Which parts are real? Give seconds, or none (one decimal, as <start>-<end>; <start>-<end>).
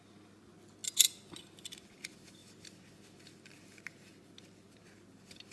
0.0-5.5